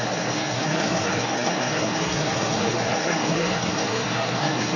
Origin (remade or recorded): remade